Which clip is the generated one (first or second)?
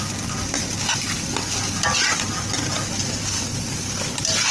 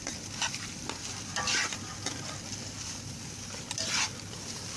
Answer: second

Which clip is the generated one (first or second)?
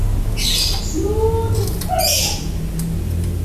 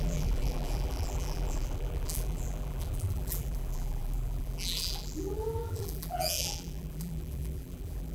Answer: second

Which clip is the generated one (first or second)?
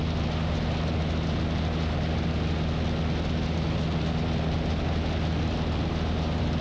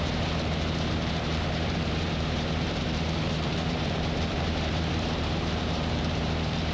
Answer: second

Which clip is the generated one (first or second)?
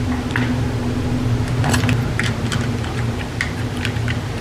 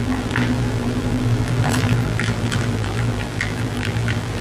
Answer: second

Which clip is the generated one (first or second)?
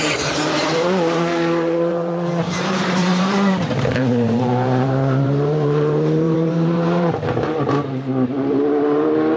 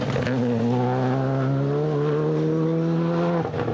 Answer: first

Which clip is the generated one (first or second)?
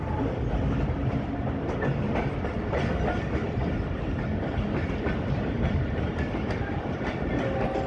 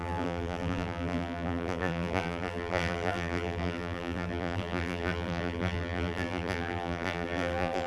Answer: second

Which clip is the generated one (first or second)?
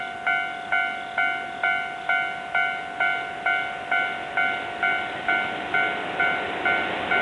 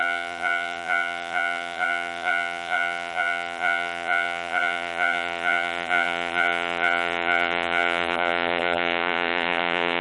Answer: second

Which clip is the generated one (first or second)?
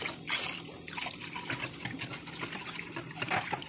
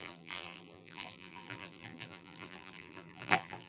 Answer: second